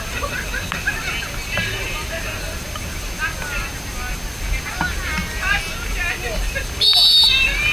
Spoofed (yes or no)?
no